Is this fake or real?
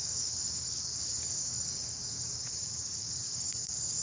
fake